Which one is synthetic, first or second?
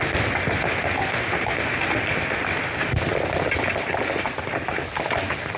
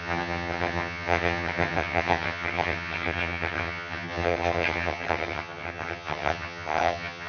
second